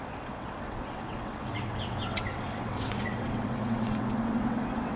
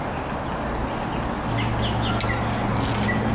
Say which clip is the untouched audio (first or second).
second